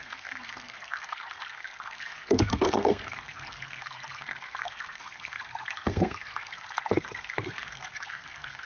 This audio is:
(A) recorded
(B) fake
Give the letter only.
B